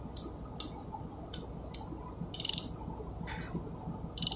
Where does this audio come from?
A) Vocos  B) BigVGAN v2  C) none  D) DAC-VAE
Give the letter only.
C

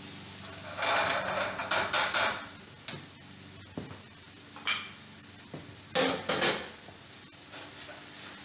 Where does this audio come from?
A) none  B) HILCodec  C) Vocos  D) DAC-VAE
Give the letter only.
A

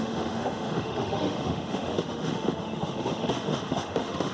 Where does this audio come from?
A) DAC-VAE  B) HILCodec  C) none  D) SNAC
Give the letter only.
A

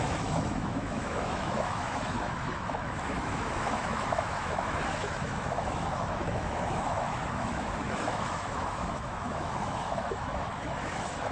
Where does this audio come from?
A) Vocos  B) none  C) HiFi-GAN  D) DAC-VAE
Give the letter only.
D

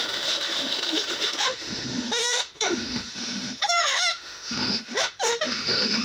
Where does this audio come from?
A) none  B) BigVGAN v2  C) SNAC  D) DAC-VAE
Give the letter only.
D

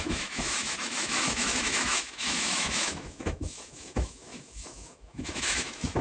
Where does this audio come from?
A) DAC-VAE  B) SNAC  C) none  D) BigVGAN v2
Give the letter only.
A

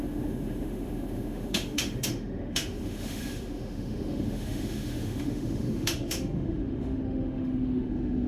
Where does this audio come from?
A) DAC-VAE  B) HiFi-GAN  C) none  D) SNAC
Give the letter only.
A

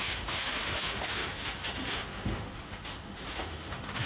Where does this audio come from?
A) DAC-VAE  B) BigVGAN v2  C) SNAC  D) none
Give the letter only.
A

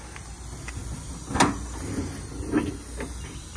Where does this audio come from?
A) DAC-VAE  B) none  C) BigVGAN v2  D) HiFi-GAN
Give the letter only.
B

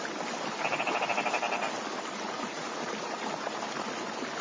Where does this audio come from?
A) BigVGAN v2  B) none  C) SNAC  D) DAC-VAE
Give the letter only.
B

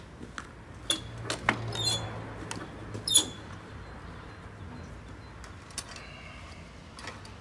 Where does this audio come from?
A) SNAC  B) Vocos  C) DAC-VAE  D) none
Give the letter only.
D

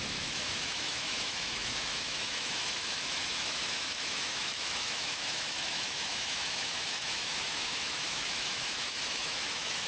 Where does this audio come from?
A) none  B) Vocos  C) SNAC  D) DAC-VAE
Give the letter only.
D